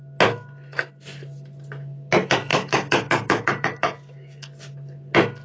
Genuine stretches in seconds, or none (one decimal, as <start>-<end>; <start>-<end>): 0.0-2.5; 4.7-5.4